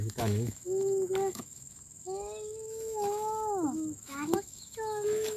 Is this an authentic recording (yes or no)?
no